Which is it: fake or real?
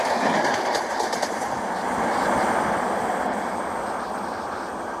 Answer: real